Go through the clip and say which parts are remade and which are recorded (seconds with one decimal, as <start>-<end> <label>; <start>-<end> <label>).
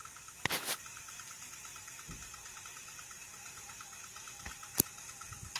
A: 0.0-5.6 recorded